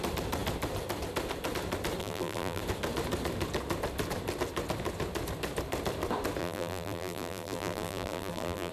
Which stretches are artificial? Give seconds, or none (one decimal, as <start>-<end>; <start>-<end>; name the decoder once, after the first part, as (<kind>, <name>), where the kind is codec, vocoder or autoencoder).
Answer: 2.0-2.6 (vocoder, BigVGAN v2); 6.4-8.7